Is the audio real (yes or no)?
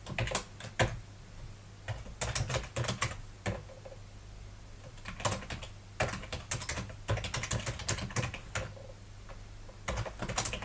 yes